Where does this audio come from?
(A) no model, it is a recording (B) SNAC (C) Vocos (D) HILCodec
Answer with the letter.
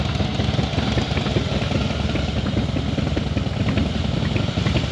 A